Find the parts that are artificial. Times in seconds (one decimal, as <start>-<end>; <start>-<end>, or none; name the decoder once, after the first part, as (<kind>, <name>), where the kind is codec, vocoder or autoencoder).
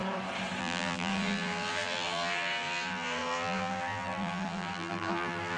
0.6-5.6 (vocoder, BigVGAN v2)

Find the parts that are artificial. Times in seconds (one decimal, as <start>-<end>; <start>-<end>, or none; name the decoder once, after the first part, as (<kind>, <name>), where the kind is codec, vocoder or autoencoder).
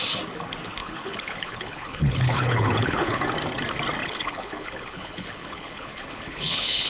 0.8-3.2 (codec, HILCodec); 4.0-6.9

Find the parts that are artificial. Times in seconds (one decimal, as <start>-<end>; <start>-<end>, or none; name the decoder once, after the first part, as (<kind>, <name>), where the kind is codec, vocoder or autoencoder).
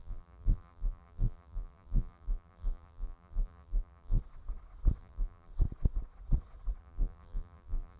0.0-4.2 (vocoder, BigVGAN v2); 5.0-5.5; 6.8-8.0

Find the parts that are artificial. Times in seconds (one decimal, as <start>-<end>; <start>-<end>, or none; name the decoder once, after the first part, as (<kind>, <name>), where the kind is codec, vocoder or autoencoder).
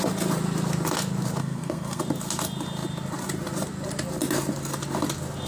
1.4-2.0 (codec, SNAC)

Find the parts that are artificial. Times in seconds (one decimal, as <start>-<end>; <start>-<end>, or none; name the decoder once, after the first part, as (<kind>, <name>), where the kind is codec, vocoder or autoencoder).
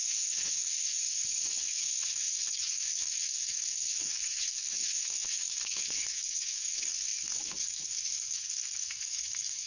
0.0-9.7 (autoencoder, DAC-VAE)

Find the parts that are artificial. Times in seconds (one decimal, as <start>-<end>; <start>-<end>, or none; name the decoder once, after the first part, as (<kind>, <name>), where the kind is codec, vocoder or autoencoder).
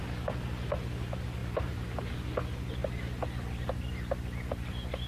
1.4-2.1 (vocoder, BigVGAN v2)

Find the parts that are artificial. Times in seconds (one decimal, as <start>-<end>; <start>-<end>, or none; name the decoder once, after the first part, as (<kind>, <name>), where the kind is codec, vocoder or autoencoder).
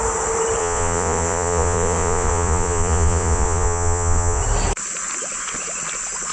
0.6-4.4 (vocoder, Vocos)